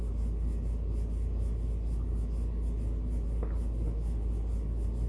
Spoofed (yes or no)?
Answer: no